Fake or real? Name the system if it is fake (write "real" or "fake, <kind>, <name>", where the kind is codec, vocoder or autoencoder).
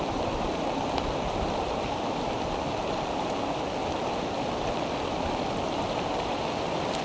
real